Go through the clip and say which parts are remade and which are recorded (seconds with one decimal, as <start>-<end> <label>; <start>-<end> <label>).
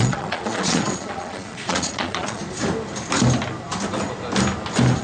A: 0.0-2.4 remade; 2.4-5.0 recorded